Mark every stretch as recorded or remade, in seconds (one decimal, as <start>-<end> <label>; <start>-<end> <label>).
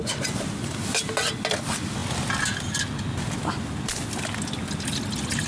0.0-5.5 recorded